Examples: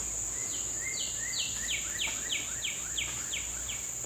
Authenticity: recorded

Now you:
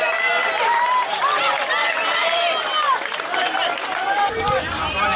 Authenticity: remade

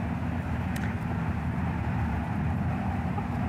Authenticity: remade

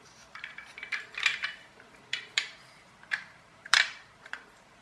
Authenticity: remade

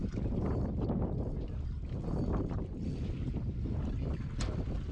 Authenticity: recorded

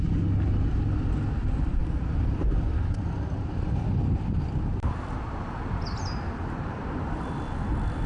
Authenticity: recorded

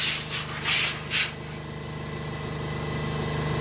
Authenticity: recorded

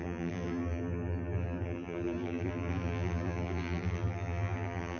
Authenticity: remade